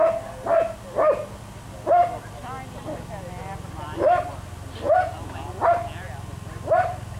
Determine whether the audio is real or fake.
real